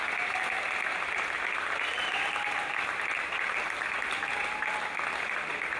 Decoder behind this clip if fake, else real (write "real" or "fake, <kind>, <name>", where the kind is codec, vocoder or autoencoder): real